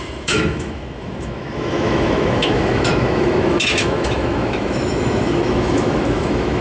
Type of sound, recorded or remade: remade